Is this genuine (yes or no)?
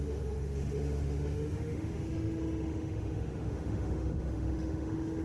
no